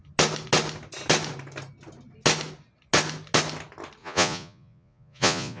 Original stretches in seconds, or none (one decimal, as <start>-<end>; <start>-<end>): 0.0-4.0